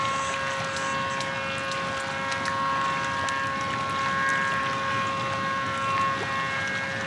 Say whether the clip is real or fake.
real